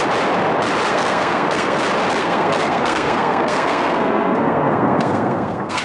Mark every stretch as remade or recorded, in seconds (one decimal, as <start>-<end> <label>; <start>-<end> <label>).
0.0-0.9 recorded; 0.9-1.8 remade; 1.8-2.2 recorded; 2.2-5.8 remade